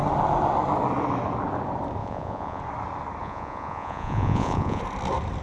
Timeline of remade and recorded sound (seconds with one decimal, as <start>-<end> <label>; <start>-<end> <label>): 0.0-2.0 recorded; 2.0-2.6 remade; 2.6-3.2 recorded; 3.2-4.8 remade; 4.8-5.4 recorded